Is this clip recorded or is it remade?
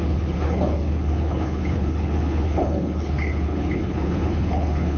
remade